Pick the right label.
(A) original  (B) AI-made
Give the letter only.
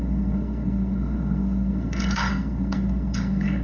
B